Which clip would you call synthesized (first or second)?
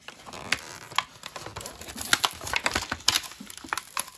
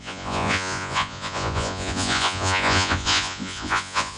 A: second